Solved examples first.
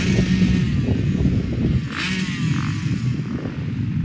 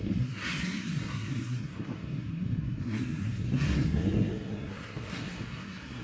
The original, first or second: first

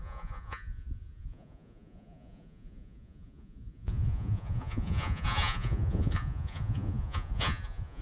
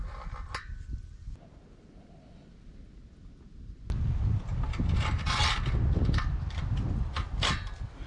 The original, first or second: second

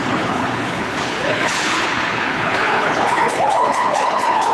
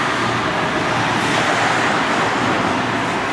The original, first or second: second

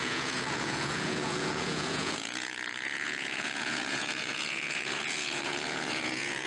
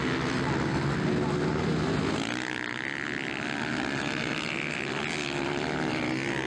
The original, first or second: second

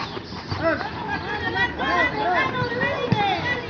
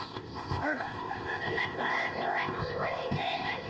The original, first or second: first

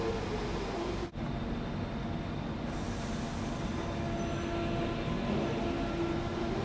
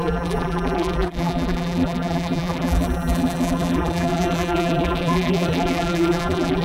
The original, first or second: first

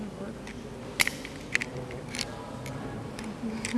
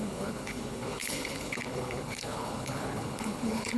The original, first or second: first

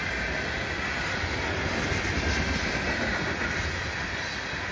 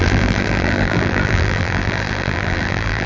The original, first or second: first